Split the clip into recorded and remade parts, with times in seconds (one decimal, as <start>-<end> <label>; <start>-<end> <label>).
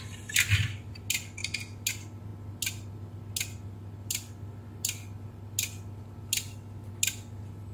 0.0-7.7 recorded